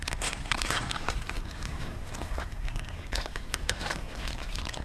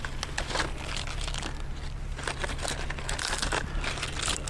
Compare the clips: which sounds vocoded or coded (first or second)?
first